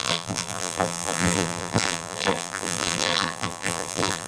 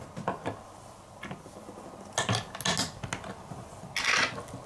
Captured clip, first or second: second